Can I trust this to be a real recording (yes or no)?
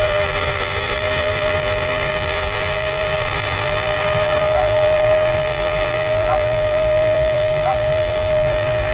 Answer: no